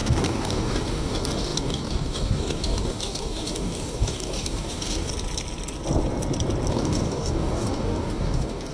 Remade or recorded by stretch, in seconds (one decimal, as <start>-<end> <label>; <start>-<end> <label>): 0.0-5.1 remade; 5.1-6.7 recorded; 6.7-8.7 remade